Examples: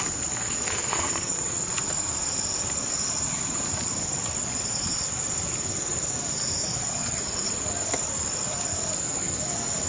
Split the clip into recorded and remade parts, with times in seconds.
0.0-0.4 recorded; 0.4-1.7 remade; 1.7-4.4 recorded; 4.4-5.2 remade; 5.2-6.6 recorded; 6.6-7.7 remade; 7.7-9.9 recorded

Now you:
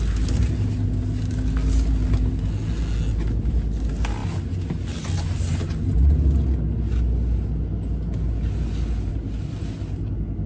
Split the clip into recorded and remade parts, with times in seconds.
0.0-10.5 recorded